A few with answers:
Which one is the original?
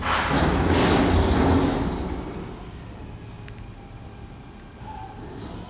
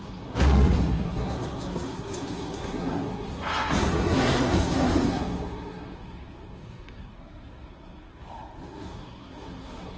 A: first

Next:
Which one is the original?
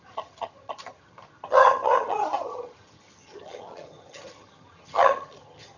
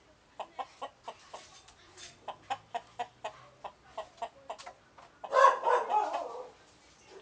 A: second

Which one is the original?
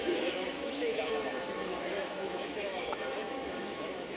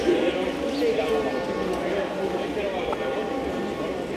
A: second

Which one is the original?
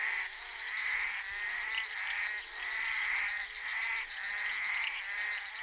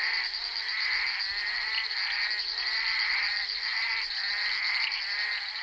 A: first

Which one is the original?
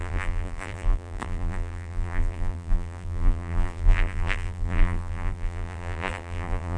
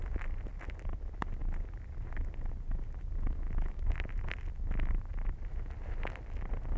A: second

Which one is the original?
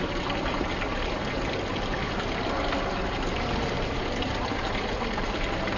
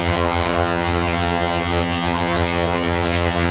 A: first